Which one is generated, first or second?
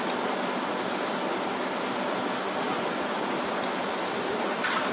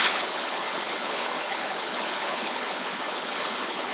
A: second